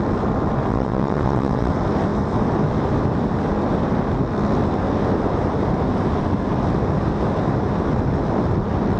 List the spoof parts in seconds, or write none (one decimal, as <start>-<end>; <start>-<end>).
0.7-1.7